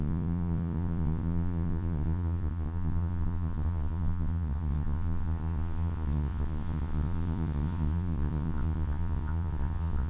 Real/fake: fake